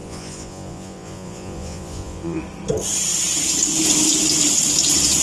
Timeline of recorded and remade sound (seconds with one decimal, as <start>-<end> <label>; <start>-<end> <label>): 0.0-2.4 remade; 2.4-5.2 recorded